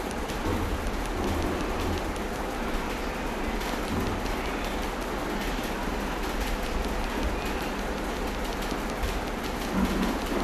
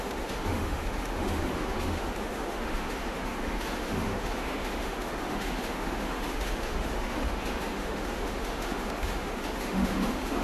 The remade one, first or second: second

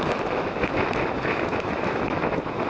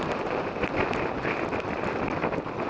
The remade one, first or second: first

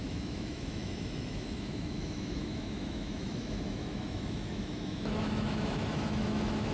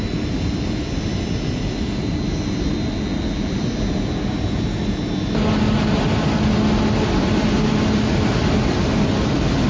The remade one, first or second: first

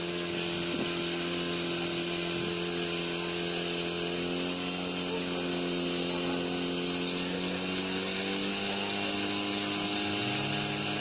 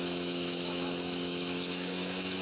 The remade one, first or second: second